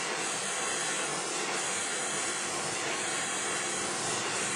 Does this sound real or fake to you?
fake